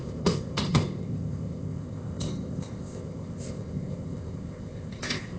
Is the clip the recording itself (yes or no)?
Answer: no